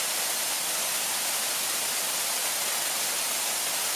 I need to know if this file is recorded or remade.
recorded